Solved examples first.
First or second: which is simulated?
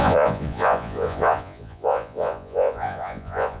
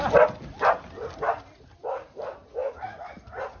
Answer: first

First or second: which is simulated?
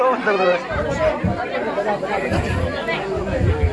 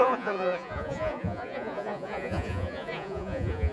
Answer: second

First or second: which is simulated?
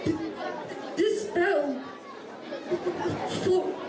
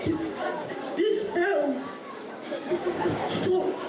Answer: second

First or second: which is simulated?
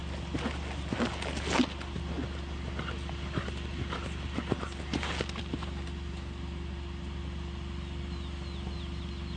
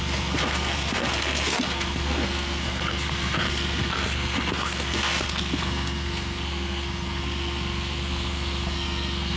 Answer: second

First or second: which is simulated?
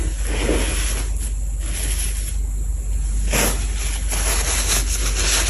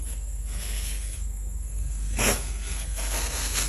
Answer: second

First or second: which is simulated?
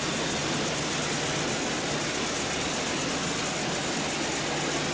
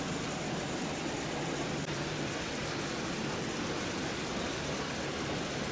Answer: second